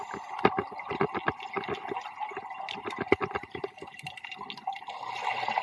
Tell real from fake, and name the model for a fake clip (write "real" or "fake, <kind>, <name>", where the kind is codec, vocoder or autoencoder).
real